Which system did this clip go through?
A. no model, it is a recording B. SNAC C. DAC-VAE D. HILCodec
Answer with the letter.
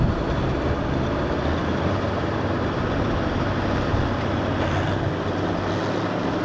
A